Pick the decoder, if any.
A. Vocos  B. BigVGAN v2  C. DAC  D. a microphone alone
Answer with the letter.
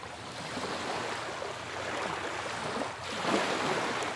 D